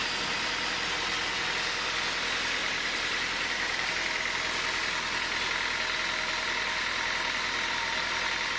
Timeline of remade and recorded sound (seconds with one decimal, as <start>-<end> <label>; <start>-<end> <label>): 0.0-2.6 recorded; 2.6-3.9 remade; 3.9-8.6 recorded